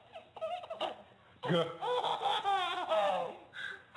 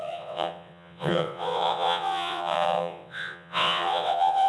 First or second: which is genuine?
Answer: first